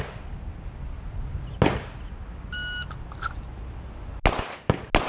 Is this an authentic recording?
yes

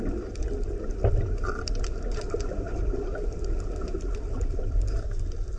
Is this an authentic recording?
yes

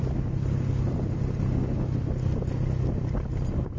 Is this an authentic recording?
yes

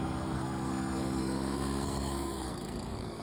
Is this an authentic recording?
no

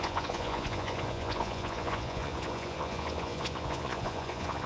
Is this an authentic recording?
no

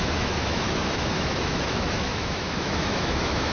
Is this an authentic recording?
no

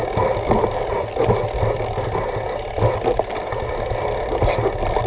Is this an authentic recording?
yes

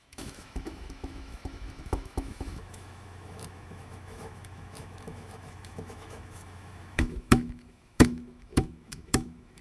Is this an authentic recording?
no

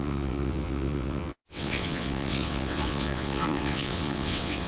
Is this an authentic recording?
no